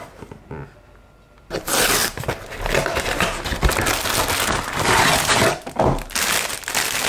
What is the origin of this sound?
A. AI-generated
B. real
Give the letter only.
B